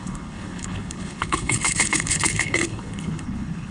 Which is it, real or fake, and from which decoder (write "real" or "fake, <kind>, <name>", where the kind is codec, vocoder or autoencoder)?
fake, codec, HILCodec